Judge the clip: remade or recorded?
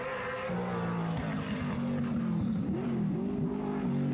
recorded